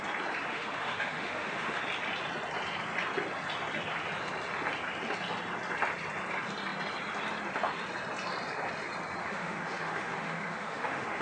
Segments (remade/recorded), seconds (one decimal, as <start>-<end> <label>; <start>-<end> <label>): 0.0-0.5 recorded; 0.5-1.8 remade; 1.8-9.2 recorded; 9.2-11.2 remade